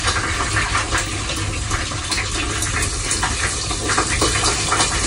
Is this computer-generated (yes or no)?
no